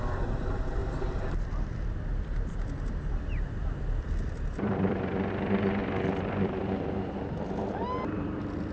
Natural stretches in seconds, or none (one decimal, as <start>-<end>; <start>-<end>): 0.0-0.8; 5.3-5.8; 6.7-8.7